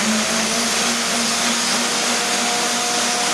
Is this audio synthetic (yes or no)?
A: no